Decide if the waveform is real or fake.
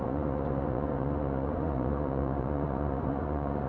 fake